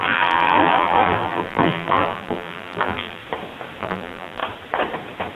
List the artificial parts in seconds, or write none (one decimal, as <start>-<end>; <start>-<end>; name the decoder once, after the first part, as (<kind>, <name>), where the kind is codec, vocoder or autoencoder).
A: 0.0-3.2 (vocoder, BigVGAN v2); 3.8-4.4